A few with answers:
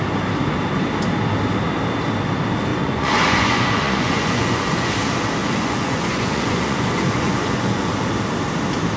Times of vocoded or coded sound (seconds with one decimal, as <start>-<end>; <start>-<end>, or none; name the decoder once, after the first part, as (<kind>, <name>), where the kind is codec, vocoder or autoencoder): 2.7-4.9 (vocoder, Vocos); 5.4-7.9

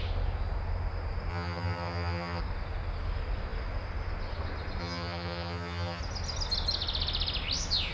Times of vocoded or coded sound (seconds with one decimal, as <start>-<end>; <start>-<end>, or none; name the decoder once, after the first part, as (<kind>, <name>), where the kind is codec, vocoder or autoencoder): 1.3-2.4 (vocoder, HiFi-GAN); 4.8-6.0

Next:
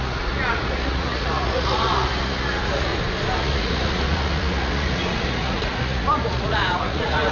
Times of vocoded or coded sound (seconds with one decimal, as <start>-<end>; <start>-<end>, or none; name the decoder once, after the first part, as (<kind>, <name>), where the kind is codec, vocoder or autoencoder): 0.0-2.9 (vocoder, Vocos); 3.4-7.3

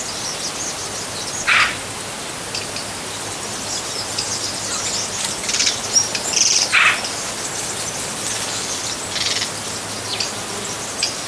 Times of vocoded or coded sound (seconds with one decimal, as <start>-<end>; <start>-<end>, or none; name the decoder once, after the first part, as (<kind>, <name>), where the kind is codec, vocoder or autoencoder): none